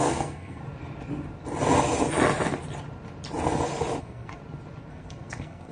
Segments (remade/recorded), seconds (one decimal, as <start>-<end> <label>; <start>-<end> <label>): 0.0-0.6 remade; 0.6-4.0 recorded; 4.0-4.4 remade; 4.4-4.9 recorded; 4.9-5.7 remade